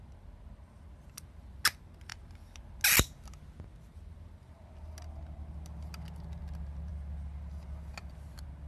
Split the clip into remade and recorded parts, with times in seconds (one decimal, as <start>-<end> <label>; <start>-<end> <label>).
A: 0.0-8.7 recorded